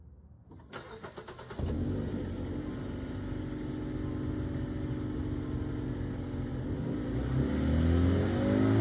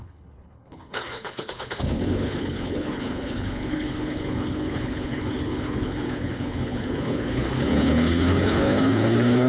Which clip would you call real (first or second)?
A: first